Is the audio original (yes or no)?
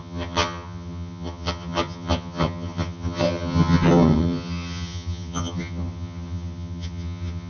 no